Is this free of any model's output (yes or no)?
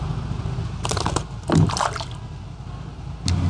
yes